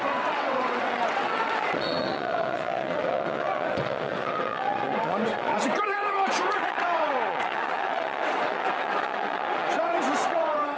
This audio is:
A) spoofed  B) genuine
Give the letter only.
A